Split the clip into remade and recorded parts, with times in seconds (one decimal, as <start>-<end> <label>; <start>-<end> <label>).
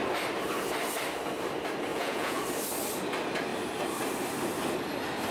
0.0-1.9 recorded; 1.9-2.4 remade; 2.4-5.3 recorded